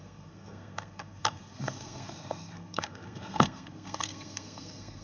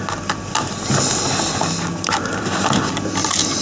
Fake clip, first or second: first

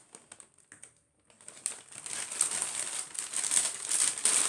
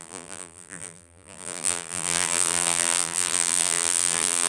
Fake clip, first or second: second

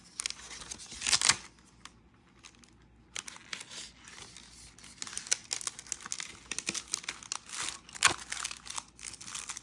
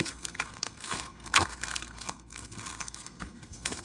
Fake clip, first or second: second